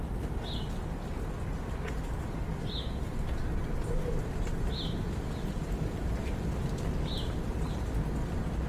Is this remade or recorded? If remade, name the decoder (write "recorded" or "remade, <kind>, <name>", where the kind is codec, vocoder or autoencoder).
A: recorded